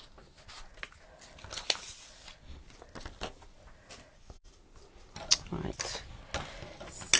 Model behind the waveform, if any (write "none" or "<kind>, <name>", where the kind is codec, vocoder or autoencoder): none